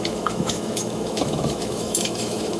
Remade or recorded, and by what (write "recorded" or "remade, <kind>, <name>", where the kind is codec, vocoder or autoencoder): remade, autoencoder, DAC-VAE